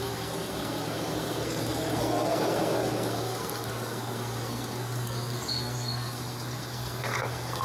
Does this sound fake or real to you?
fake